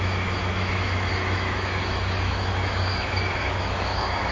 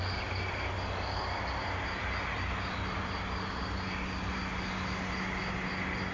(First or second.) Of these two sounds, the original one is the second